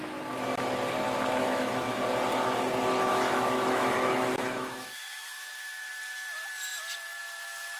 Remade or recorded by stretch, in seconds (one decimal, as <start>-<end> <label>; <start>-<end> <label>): 0.0-1.4 recorded; 1.4-2.0 remade; 2.0-3.1 recorded; 3.1-5.9 remade; 5.9-7.8 recorded